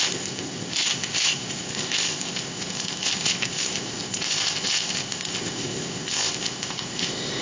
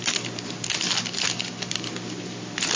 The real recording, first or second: second